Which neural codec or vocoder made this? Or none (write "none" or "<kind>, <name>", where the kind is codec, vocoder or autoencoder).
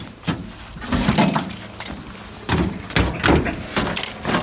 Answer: none